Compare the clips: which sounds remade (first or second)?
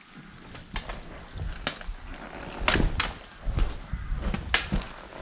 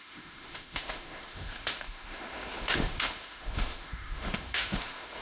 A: second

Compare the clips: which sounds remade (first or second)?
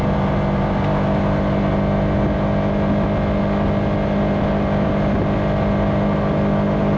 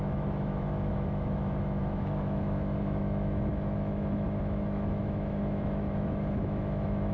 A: second